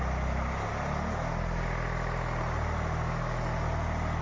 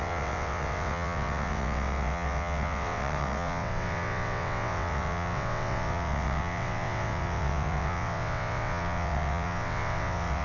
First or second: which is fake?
second